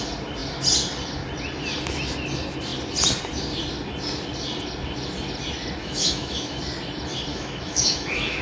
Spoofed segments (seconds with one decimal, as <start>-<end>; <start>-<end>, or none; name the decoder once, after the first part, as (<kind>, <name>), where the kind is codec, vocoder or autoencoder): 5.8-6.6 (autoencoder, DAC-VAE); 7.3-8.4